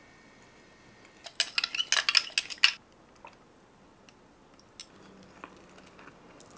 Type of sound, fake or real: real